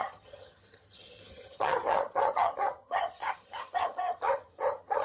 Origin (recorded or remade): remade